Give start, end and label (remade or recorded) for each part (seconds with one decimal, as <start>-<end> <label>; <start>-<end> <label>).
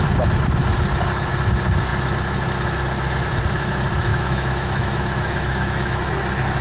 0.0-4.1 recorded; 4.1-6.0 remade; 6.0-6.6 recorded